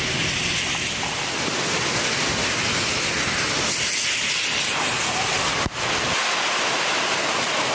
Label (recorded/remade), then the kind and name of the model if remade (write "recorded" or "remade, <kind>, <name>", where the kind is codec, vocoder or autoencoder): recorded